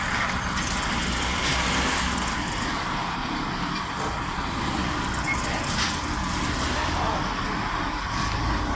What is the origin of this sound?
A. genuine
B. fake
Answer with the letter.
A